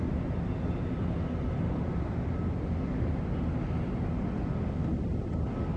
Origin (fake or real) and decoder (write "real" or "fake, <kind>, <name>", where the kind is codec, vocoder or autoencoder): real